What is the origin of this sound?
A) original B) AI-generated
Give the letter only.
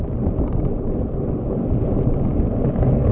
A